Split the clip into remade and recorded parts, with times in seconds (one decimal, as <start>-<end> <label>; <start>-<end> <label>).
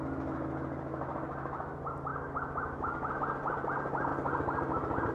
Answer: 0.0-2.1 recorded; 2.1-3.2 remade; 3.2-5.1 recorded